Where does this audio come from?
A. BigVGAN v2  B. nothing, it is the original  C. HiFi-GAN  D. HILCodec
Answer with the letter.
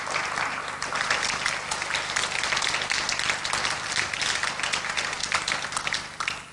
B